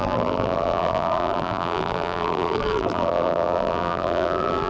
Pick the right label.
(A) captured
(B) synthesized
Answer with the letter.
B